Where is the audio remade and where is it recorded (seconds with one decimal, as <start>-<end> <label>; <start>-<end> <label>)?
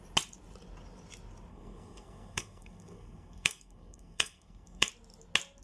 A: 0.0-1.5 recorded; 1.5-4.9 remade; 4.9-5.6 recorded